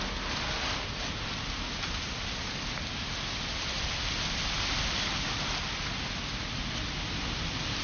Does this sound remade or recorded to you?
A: recorded